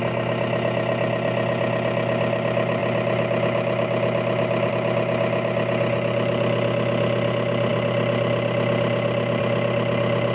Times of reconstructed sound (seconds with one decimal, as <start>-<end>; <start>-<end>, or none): 2.8-4.7